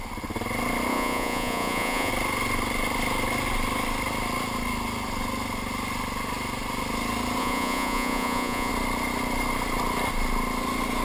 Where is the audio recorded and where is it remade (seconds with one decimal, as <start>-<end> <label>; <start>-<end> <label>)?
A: 0.0-0.9 recorded; 0.9-2.1 remade; 2.1-7.4 recorded; 7.4-8.7 remade; 8.7-11.0 recorded